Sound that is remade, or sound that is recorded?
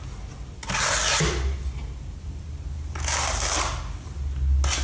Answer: recorded